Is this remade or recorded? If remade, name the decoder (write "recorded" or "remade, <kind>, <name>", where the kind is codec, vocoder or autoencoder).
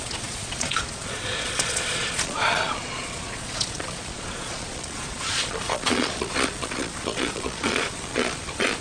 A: remade, vocoder, Vocos